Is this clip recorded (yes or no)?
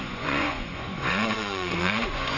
no